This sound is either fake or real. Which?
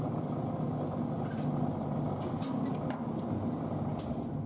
real